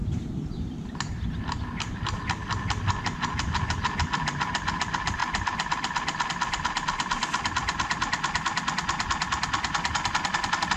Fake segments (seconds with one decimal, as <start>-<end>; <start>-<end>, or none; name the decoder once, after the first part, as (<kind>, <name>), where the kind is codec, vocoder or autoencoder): none